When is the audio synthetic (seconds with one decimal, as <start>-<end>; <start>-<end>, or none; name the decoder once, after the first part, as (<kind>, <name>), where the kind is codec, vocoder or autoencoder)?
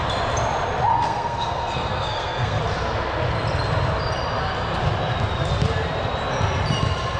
0.9-2.6 (codec, SNAC)